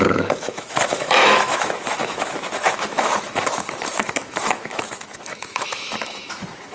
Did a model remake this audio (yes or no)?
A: yes